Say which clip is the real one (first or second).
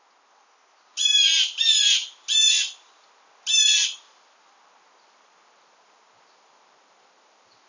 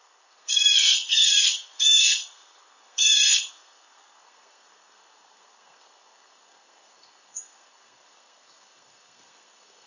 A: first